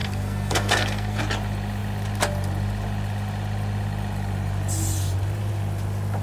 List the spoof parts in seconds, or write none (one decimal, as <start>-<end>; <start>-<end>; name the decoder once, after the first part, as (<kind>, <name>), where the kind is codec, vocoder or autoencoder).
0.0-1.2 (codec, SNAC)